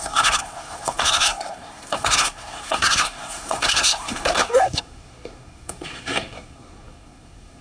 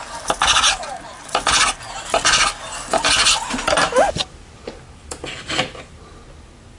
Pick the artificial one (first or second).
first